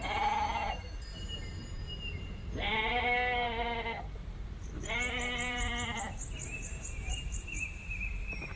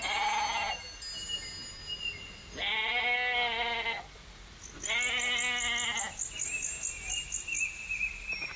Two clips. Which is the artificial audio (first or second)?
first